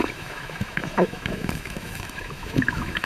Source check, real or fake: fake